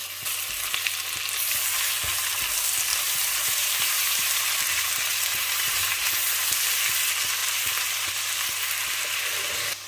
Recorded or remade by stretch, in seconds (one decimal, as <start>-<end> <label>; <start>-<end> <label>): 0.0-2.9 recorded; 2.9-6.3 remade; 6.3-7.4 recorded; 7.4-9.2 remade; 9.2-9.9 recorded